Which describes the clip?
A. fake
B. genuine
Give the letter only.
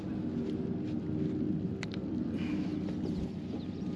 B